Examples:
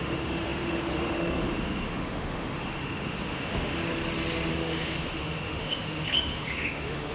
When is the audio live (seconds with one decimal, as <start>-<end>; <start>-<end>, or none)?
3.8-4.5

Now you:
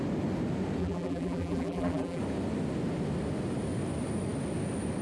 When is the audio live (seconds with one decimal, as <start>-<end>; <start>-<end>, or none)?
0.0-0.8; 2.2-5.0

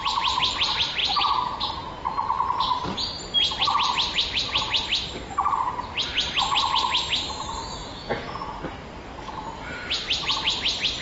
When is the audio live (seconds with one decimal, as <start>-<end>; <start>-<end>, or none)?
0.0-1.0; 1.7-7.8; 8.6-11.0